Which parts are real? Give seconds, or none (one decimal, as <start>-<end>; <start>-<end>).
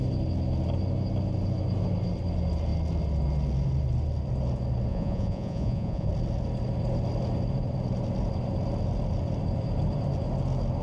0.0-4.9; 6.1-10.8